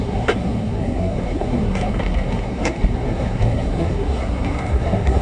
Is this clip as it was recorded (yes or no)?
no